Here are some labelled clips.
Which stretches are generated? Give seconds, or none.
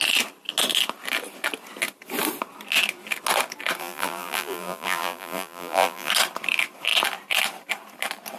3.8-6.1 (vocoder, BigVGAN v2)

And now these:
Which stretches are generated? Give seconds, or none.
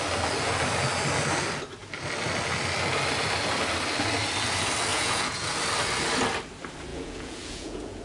4.9-5.5 (vocoder, Vocos); 6.9-8.0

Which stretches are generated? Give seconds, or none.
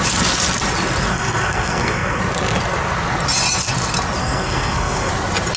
1.1-2.2 (codec, SNAC); 4.2-5.1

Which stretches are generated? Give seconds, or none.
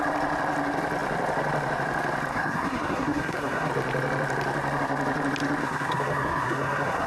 2.3-3.7 (codec, SNAC); 5.6-7.1